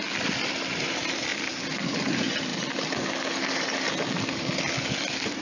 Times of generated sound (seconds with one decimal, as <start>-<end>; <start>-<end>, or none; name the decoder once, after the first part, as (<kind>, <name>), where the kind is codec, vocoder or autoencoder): none